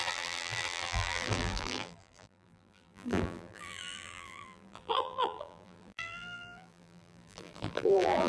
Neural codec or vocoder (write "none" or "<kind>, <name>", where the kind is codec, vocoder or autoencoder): vocoder, BigVGAN v2